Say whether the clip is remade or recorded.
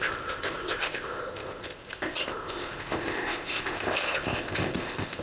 remade